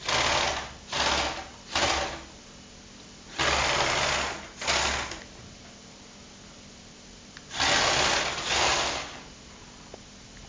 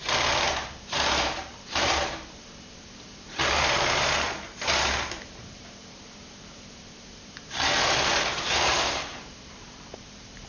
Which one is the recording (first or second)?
first